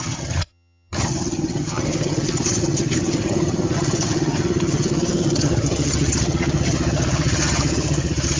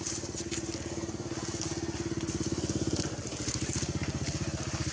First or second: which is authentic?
second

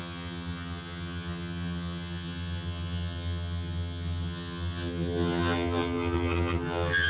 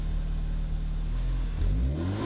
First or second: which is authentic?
second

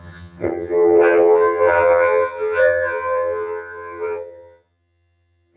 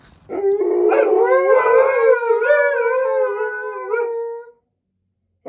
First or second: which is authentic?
second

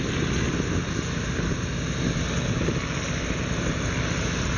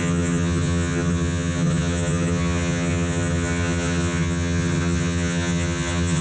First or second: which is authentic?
first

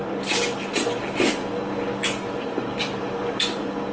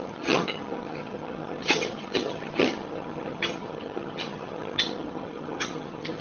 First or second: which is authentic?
first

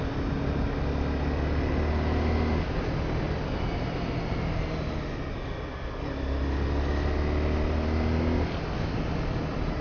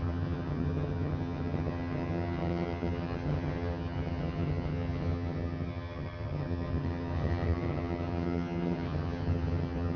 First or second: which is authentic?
first